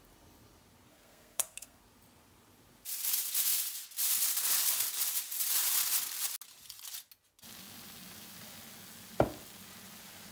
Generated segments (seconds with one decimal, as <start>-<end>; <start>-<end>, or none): 0.9-1.8